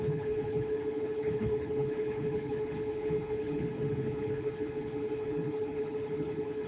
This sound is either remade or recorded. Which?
remade